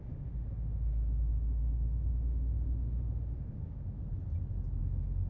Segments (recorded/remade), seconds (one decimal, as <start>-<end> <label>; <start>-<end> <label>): 0.0-4.0 remade; 4.0-4.8 recorded; 4.8-5.3 remade